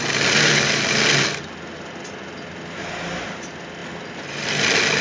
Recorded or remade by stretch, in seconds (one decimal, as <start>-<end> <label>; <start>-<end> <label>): 0.0-5.0 recorded